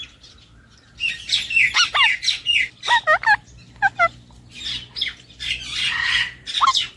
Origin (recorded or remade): recorded